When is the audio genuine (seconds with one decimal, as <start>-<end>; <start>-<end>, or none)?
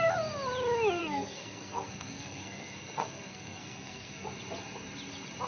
0.0-1.0; 4.3-5.5